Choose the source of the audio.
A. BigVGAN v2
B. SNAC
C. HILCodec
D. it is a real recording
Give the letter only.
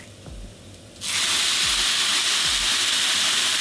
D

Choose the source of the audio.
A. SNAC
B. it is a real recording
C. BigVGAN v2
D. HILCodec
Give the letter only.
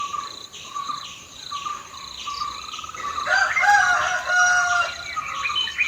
B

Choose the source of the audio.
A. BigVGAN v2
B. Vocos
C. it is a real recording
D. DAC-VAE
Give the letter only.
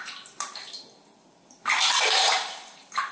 C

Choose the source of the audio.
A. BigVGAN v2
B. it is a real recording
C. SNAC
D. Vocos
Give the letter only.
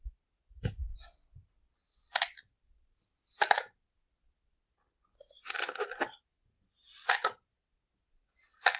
B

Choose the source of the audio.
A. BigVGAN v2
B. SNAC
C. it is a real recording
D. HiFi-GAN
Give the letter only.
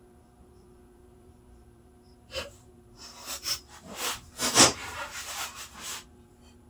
A